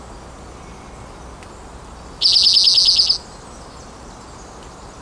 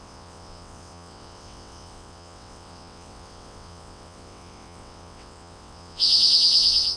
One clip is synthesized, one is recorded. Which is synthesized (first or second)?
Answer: second